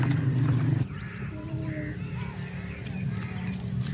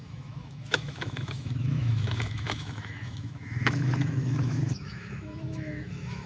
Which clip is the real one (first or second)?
first